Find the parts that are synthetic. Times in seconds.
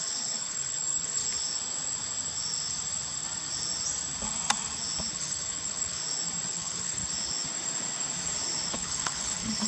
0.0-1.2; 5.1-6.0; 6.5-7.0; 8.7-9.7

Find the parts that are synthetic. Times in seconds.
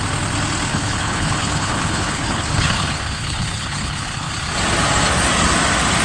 0.7-4.3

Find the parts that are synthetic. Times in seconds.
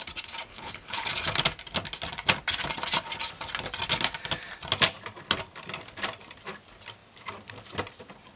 0.5-1.1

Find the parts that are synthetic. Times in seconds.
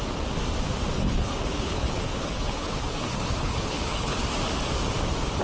1.0-4.2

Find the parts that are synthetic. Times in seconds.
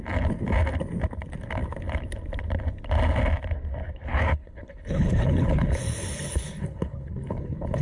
4.1-7.8